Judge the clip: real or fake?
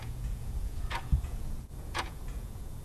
fake